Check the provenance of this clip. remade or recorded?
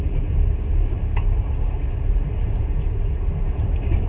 recorded